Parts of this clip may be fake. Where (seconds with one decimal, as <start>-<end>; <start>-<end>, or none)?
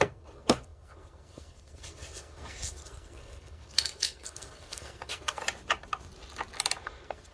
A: 0.0-5.4; 6.8-7.3